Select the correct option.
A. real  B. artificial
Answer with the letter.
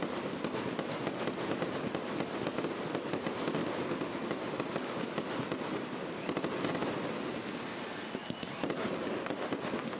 A